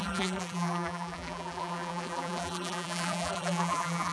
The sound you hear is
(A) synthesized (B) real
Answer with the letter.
A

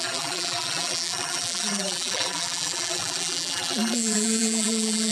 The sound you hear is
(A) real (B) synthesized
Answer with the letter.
B